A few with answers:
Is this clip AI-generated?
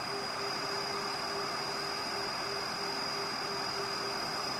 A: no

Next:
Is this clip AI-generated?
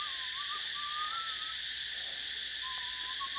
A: no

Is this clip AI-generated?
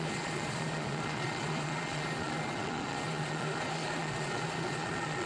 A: yes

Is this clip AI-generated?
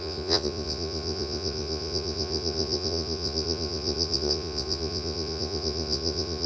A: yes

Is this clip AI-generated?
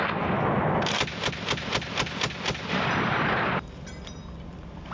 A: no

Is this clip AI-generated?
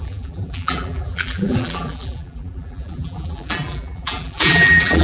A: yes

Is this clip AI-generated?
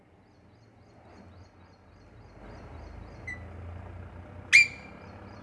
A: no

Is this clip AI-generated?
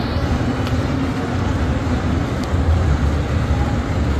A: no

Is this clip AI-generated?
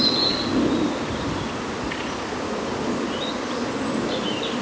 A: no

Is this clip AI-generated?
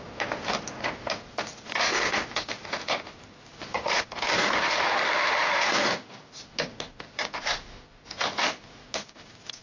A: no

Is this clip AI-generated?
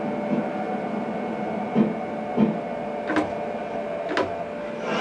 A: no